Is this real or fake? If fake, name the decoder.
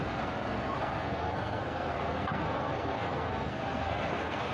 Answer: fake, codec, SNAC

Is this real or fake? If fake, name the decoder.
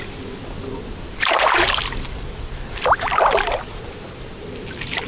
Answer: real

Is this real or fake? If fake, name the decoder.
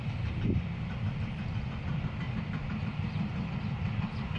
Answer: real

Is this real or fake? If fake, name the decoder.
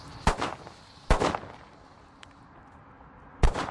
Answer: real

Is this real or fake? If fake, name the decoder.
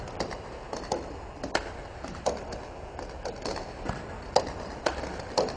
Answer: real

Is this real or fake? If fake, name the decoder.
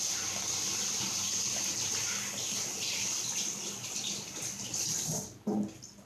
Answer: real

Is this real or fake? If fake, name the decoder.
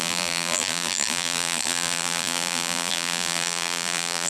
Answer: fake, vocoder, BigVGAN v2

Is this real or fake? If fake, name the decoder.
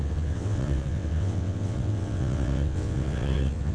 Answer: fake, vocoder, WaveNeXt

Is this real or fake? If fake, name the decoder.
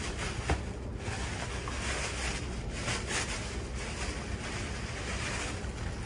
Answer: real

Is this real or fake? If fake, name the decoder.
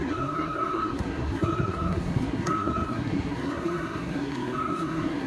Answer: fake, codec, SNAC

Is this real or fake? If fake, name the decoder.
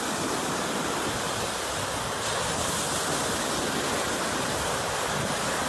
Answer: real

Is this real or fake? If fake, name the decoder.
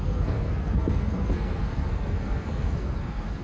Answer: fake, codec, SNAC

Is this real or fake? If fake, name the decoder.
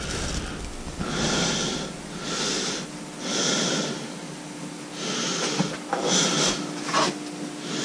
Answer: real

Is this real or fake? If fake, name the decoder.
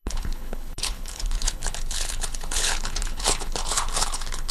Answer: fake, codec, HILCodec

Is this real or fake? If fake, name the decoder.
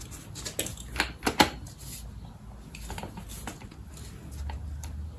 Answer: real